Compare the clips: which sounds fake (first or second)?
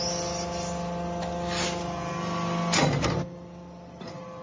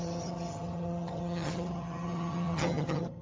second